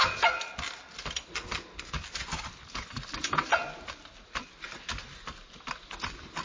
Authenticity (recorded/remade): recorded